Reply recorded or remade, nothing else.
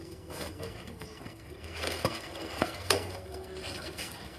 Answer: remade